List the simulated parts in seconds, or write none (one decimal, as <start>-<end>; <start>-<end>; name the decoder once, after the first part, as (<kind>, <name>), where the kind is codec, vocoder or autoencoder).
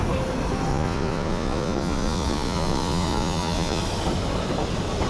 0.7-3.8 (vocoder, Vocos)